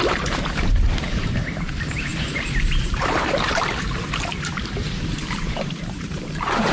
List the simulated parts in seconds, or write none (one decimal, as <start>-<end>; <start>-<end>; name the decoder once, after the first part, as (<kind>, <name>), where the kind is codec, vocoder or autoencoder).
0.0-6.7 (vocoder, BigVGAN v2)